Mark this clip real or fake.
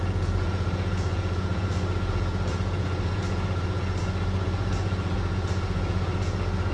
fake